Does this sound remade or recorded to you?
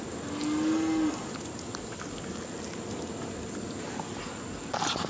recorded